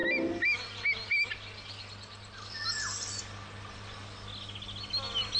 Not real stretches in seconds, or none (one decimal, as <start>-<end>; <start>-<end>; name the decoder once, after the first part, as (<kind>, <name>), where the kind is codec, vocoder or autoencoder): none